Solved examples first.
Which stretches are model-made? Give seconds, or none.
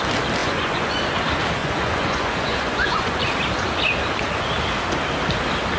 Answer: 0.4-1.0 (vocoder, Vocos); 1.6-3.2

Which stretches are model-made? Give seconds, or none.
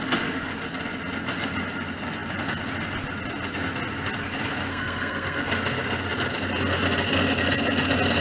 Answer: 4.7-5.4 (codec, SNAC)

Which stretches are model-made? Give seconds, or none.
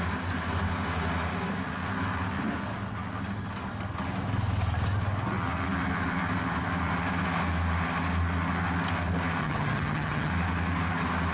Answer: 9.4-10.3 (vocoder, HiFi-GAN)